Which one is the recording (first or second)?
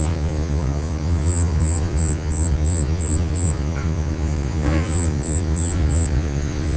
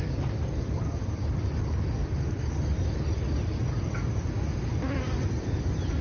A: second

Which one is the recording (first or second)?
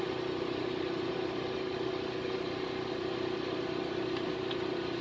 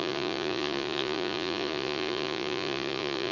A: first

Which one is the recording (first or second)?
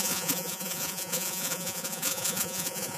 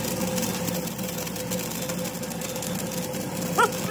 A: second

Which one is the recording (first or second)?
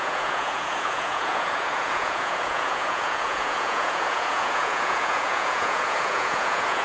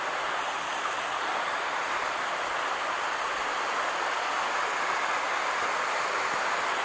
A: second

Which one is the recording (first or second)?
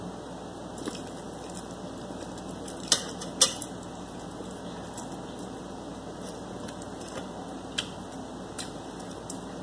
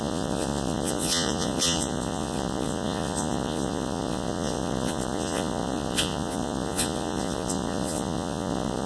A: first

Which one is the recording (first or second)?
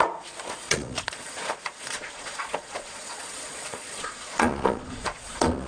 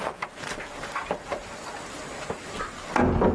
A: second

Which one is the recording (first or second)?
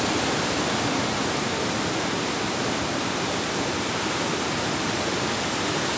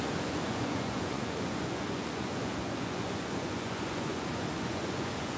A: first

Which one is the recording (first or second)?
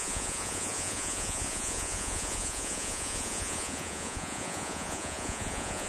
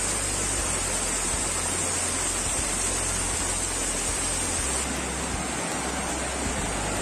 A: second